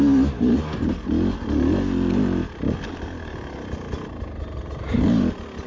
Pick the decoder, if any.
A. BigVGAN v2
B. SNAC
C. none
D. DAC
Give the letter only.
C